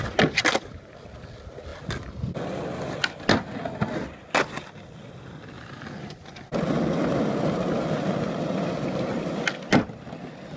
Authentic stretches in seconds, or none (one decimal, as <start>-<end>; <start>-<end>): 0.0-10.6